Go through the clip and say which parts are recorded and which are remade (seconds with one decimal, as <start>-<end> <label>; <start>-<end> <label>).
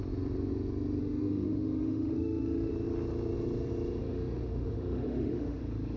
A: 0.0-1.0 recorded; 1.0-2.7 remade; 2.7-4.0 recorded; 4.0-5.6 remade; 5.6-6.0 recorded